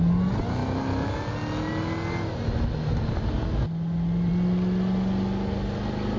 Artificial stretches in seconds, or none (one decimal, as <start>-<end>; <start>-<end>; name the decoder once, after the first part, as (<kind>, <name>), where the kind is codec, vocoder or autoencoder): none